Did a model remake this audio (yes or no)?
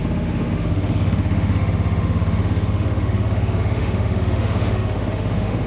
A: yes